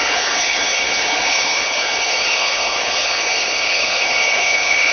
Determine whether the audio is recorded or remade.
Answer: remade